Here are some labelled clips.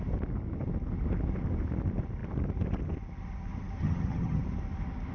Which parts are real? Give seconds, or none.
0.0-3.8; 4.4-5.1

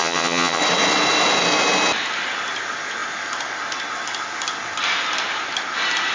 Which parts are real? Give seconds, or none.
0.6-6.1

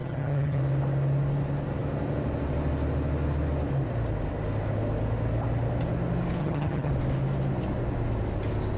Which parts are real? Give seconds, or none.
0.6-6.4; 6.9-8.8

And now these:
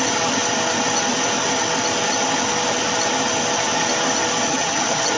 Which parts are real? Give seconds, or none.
0.0-4.5